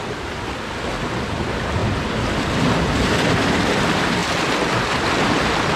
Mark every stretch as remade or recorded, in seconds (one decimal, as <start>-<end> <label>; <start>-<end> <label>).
0.0-5.8 recorded